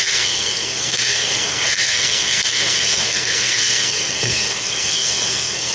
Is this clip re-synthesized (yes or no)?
yes